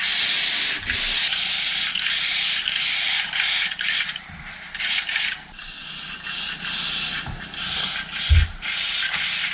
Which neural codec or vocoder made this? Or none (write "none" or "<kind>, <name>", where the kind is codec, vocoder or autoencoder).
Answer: none